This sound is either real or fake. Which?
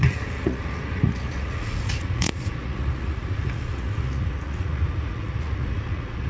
fake